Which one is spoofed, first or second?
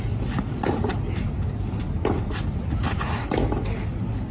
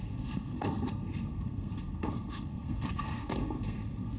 second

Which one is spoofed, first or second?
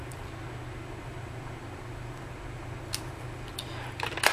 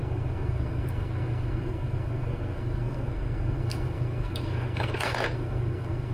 second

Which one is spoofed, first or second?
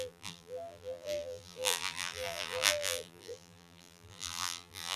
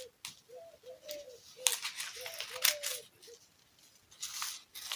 first